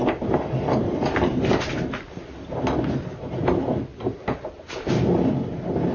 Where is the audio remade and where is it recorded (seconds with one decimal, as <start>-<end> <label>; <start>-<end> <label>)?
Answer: 0.0-5.9 recorded